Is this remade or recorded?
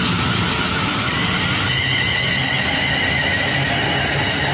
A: recorded